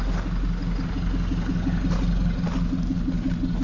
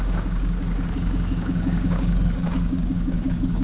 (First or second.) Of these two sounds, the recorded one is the first